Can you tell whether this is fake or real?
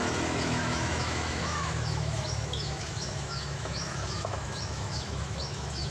fake